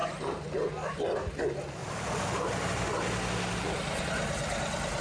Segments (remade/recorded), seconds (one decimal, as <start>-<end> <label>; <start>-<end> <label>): 0.0-1.4 remade; 1.4-1.8 recorded; 1.8-4.0 remade; 4.0-5.0 recorded